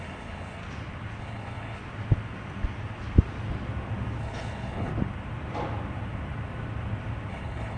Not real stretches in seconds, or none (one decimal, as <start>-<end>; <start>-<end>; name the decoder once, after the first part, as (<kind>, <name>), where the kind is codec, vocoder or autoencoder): 0.0-0.6 (codec, HILCodec); 1.2-1.8; 4.2-4.9; 7.3-7.8